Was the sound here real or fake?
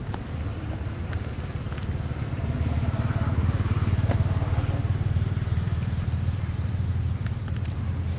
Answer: real